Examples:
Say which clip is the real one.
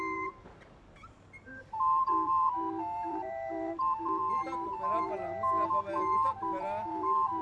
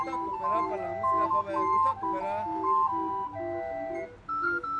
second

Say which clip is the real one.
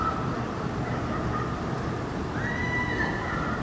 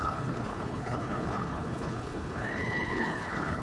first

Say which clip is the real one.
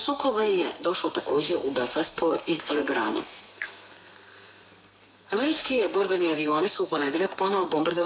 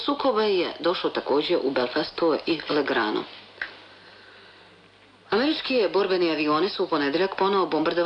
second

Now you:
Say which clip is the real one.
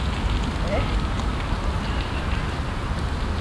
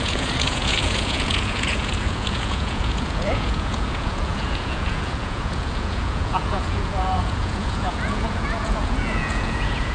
first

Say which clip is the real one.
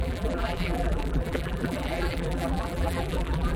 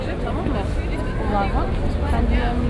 second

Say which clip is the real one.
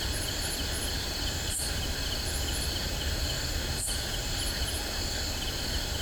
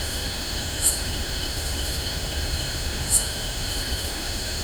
first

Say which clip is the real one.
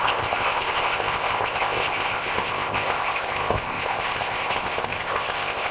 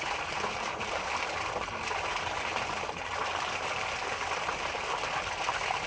second